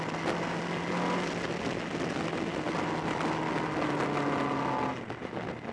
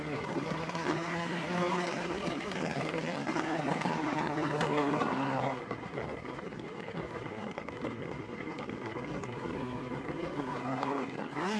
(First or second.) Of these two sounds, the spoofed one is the second